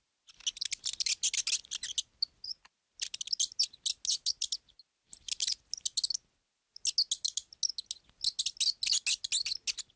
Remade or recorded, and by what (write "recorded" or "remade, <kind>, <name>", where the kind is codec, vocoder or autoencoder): recorded